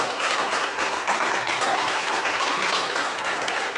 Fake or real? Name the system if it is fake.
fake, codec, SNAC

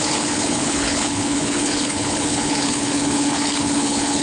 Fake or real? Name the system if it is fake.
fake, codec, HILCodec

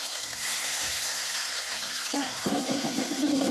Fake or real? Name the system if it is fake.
fake, codec, SNAC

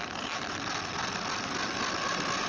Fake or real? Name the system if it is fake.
real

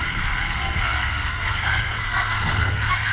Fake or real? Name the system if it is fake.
fake, codec, SNAC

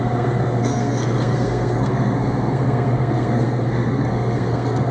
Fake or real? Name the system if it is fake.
fake, codec, SNAC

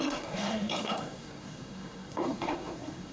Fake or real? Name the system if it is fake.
fake, codec, SNAC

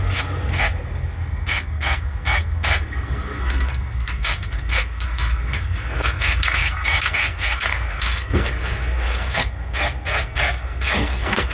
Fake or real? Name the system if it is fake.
fake, codec, SNAC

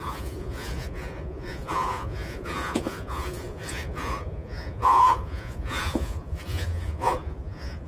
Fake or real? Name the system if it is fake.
fake, vocoder, Vocos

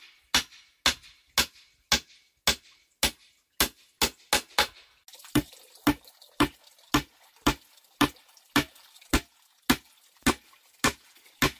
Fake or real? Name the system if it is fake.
real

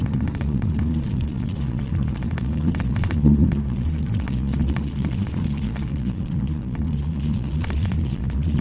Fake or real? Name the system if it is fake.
fake, vocoder, Vocos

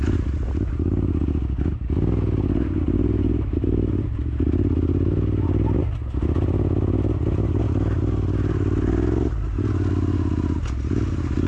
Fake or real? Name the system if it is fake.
real